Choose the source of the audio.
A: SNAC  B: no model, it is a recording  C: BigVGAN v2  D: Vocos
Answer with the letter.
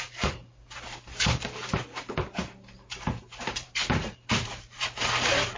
C